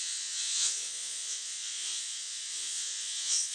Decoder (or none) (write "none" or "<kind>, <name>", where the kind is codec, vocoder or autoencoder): vocoder, Vocos